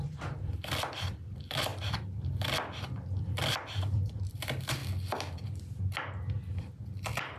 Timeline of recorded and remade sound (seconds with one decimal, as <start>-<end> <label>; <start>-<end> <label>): 0.0-1.7 remade; 1.7-3.2 recorded; 3.2-4.8 remade; 4.8-6.6 recorded; 6.6-7.4 remade